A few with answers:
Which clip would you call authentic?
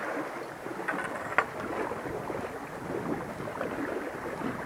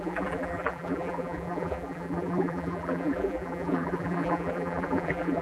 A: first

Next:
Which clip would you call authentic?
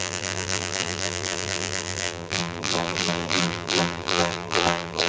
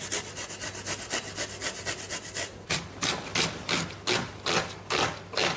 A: second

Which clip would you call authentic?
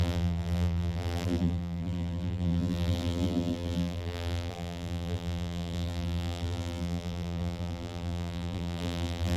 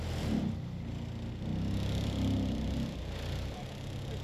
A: second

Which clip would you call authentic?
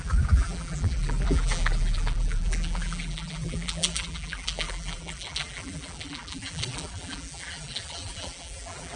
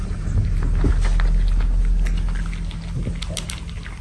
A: second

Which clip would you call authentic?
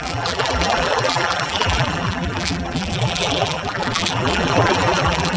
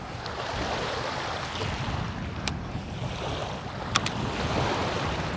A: second